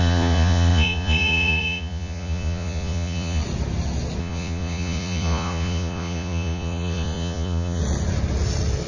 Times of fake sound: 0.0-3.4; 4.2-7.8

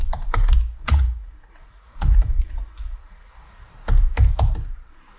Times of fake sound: 0.8-3.3

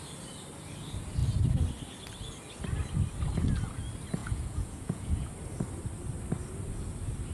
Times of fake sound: 4.2-5.3

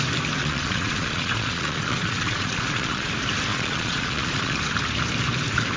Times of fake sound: 0.4-3.1; 3.5-4.6